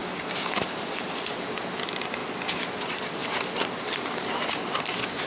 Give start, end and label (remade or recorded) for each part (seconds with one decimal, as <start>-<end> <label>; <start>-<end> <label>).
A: 0.0-2.2 remade; 2.2-2.8 recorded; 2.8-5.3 remade